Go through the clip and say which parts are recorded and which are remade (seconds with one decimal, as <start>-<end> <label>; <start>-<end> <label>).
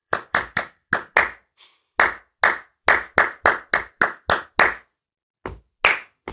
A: 0.0-0.9 remade; 0.9-6.3 recorded